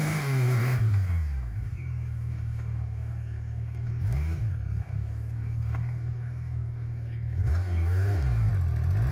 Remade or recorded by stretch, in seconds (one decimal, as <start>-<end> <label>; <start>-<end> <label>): 0.0-8.5 remade; 8.5-9.1 recorded